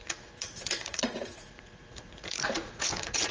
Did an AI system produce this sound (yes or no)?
yes